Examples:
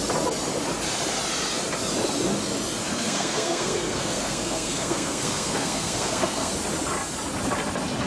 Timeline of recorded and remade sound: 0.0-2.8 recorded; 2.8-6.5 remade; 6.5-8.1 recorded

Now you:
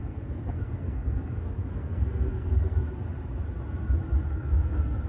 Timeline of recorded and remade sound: 0.0-2.8 remade; 2.8-4.3 recorded; 4.3-5.1 remade

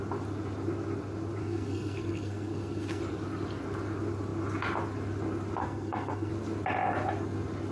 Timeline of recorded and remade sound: 0.0-1.4 recorded; 1.4-3.0 remade; 3.0-5.6 recorded; 5.6-6.3 remade; 6.3-7.7 recorded

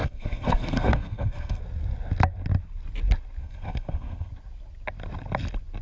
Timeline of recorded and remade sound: 0.0-1.6 remade; 1.6-3.4 recorded; 3.4-4.3 remade; 4.3-5.8 recorded

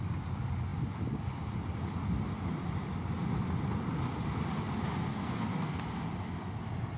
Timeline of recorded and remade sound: 0.0-5.1 recorded; 5.1-5.8 remade; 5.8-7.0 recorded